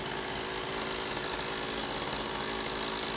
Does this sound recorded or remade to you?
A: recorded